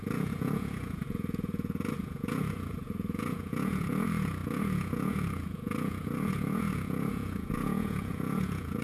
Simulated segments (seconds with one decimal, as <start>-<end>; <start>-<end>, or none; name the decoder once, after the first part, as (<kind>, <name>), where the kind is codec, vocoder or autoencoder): 0.0-8.8 (vocoder, Vocos)